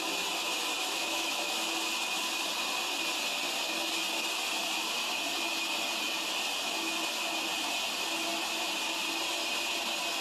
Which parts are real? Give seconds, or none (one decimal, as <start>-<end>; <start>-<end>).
0.0-0.8; 1.5-10.2